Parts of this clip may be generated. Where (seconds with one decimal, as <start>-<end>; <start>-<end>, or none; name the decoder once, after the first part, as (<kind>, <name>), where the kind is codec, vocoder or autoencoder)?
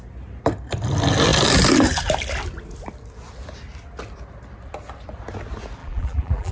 5.8-6.5 (vocoder, BigVGAN v2)